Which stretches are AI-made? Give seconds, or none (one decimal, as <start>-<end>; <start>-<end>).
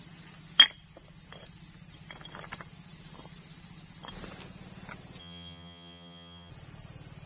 5.2-6.5